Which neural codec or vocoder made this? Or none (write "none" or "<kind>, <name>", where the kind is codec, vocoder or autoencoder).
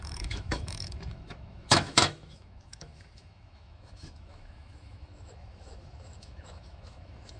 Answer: autoencoder, DAC-VAE